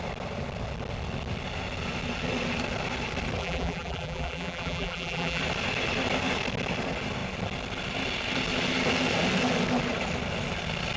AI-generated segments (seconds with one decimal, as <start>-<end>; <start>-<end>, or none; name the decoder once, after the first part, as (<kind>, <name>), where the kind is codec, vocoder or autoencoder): 3.4-5.4 (vocoder, BigVGAN v2)